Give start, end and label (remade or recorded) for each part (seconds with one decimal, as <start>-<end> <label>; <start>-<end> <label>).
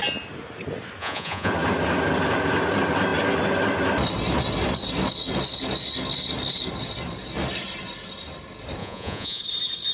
0.0-1.0 recorded; 1.0-1.5 remade; 1.5-8.8 recorded; 8.8-9.4 remade; 9.4-9.9 recorded